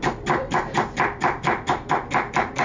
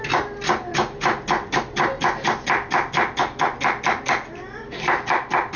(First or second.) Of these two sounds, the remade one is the first